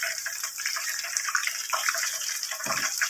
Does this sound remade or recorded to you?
remade